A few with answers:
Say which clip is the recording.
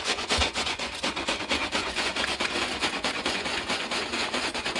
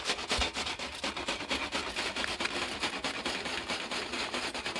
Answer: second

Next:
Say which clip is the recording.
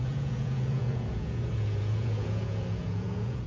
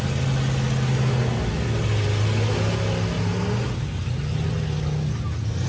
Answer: second